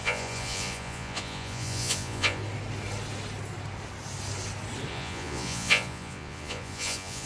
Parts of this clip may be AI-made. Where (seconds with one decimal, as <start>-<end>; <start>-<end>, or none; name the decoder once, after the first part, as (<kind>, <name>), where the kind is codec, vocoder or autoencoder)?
0.0-2.4 (vocoder, Vocos); 4.9-7.3

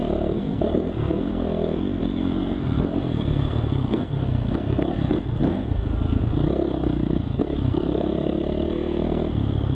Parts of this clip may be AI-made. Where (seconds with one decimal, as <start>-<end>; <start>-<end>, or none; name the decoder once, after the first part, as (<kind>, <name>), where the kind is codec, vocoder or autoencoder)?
0.0-9.7 (codec, SNAC)

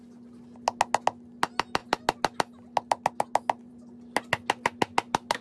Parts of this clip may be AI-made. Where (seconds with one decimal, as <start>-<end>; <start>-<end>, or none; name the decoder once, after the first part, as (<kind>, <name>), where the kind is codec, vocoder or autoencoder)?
none

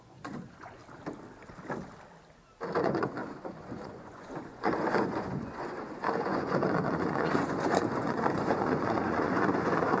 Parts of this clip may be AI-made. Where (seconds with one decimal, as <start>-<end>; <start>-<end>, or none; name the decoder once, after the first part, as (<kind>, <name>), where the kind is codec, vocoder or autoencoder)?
0.0-0.8 (vocoder, Vocos); 2.8-10.0

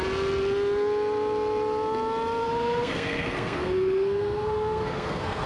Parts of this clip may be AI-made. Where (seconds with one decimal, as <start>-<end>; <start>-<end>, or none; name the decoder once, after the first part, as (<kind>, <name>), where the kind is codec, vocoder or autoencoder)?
2.4-5.5 (codec, SNAC)

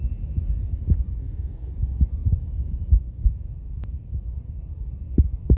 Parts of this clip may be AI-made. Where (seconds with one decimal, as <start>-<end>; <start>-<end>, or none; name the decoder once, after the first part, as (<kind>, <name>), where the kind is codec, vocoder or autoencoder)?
1.2-1.7 (codec, DAC)